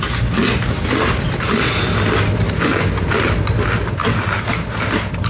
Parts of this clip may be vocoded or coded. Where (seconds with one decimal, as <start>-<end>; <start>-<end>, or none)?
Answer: none